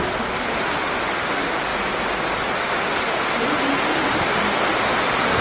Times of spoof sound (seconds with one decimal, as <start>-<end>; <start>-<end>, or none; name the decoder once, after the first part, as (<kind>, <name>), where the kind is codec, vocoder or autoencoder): none